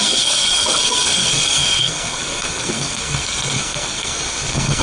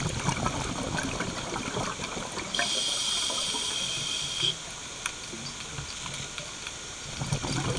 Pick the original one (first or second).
second